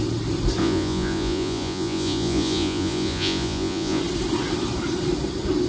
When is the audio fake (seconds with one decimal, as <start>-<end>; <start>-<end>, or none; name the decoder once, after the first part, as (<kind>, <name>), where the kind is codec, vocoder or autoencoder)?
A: 0.6-4.0 (vocoder, Vocos)